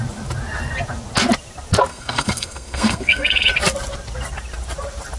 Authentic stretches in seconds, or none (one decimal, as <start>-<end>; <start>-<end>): 0.0-1.9; 3.5-5.2